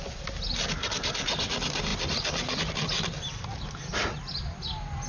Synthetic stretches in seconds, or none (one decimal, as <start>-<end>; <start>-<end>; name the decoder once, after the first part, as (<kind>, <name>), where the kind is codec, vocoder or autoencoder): none